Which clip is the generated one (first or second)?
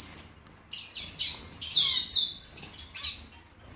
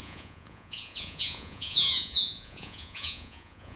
second